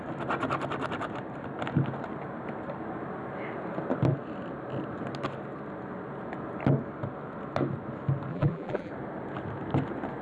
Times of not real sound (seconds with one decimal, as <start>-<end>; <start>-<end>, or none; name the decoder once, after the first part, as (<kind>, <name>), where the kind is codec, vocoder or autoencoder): 8.3-8.9 (vocoder, BigVGAN v2)